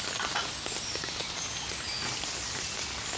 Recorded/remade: recorded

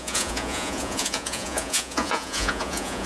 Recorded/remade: remade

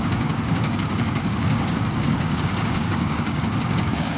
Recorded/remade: remade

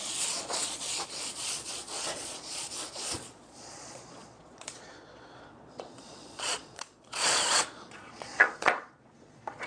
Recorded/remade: remade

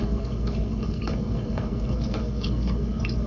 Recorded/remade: remade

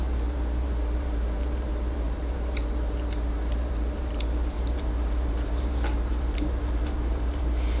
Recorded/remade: remade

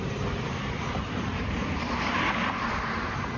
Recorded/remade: remade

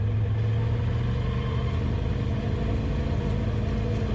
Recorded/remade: recorded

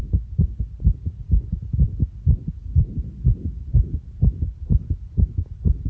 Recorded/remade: recorded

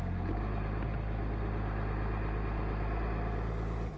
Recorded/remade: recorded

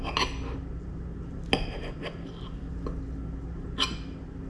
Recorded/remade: recorded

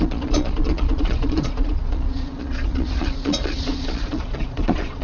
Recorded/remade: remade